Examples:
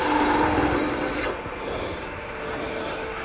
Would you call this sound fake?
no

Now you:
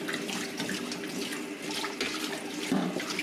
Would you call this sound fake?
no